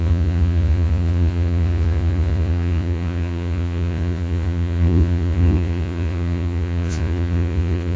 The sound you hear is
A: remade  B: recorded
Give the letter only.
A